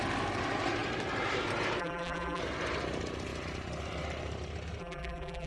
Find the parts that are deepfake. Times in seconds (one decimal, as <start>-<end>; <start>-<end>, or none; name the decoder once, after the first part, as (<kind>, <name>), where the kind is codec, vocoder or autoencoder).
1.8-2.4 (vocoder, BigVGAN v2); 4.8-5.5